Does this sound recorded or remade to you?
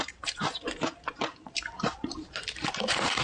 remade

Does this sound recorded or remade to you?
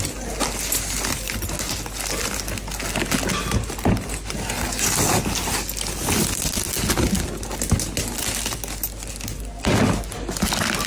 recorded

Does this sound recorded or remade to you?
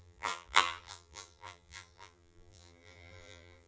remade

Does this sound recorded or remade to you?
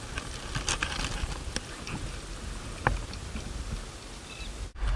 recorded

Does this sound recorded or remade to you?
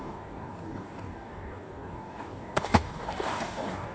remade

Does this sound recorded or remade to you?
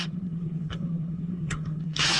remade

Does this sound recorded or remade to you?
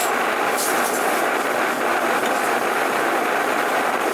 remade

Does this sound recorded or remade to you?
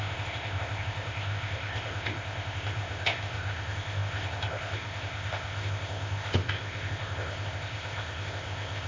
remade